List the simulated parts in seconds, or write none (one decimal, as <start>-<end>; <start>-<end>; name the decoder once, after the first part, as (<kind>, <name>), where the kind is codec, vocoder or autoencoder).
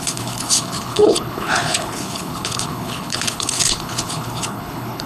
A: 0.0-5.1 (codec, HILCodec)